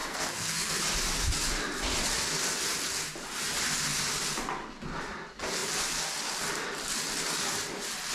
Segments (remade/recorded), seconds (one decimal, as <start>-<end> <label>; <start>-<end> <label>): 0.0-0.8 remade; 0.8-8.1 recorded